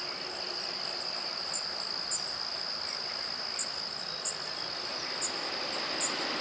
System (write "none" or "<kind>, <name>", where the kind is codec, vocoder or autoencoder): none